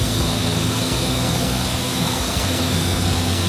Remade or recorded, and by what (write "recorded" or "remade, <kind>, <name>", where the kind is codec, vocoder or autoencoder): remade, codec, SNAC